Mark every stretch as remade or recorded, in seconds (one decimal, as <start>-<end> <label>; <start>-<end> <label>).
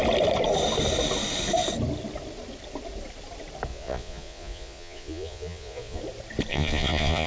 0.0-3.7 recorded; 3.7-6.0 remade; 6.0-6.5 recorded; 6.5-7.3 remade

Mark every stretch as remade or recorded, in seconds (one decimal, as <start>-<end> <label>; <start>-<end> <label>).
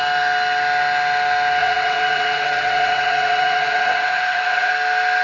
0.0-1.6 recorded; 1.6-4.7 remade; 4.7-5.2 recorded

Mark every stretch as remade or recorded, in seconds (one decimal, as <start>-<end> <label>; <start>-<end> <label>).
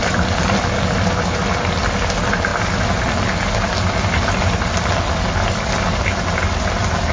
0.0-7.1 recorded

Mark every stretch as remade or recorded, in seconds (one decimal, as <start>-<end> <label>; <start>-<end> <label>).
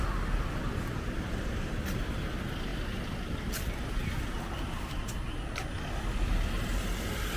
0.0-7.4 recorded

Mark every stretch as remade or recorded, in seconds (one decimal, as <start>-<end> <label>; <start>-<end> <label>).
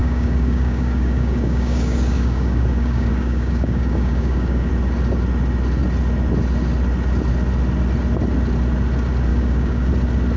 0.0-4.7 remade; 4.7-9.3 recorded; 9.3-9.9 remade; 9.9-10.4 recorded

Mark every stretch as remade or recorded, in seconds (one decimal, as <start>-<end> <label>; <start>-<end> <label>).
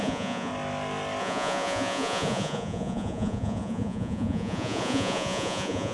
0.0-0.5 remade; 0.5-1.2 recorded; 1.2-5.9 remade